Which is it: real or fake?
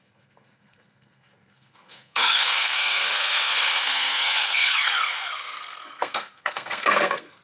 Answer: fake